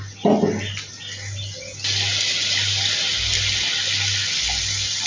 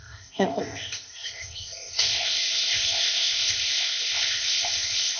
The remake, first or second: second